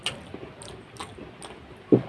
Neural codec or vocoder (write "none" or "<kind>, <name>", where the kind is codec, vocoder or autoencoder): none